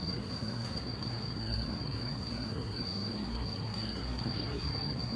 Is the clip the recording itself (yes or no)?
no